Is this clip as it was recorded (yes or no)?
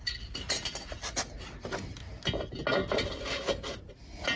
yes